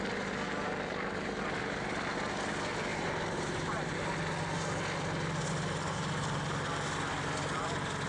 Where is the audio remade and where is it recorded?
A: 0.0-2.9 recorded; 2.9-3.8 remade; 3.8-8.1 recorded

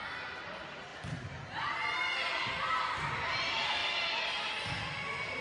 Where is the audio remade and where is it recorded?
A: 0.0-0.9 recorded; 0.9-1.5 remade; 1.5-5.4 recorded